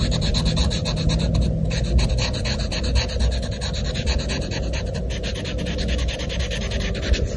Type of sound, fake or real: real